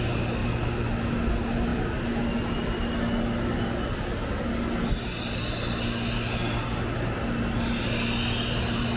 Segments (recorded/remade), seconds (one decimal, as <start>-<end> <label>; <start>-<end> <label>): 0.0-9.0 recorded